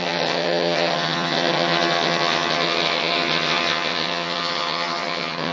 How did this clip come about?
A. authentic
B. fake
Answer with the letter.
B